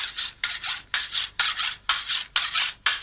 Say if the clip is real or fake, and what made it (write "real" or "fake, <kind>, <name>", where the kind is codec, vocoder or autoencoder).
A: real